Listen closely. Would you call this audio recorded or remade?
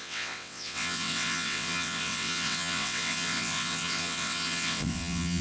remade